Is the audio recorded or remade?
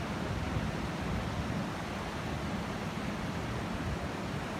recorded